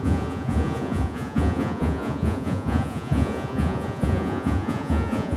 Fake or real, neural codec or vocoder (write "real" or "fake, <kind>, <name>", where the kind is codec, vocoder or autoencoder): fake, vocoder, Vocos